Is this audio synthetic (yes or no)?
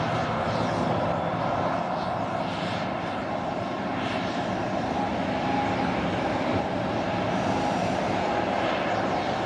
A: yes